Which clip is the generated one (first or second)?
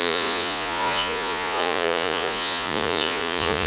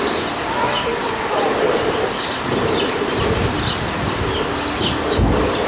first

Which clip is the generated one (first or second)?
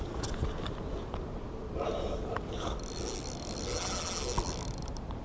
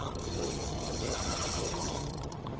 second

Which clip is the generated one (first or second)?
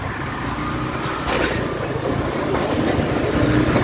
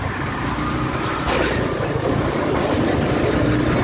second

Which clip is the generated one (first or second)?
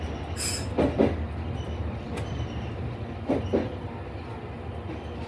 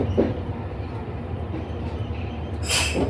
second